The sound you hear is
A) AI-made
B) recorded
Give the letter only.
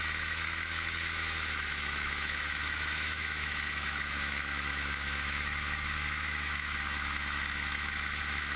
A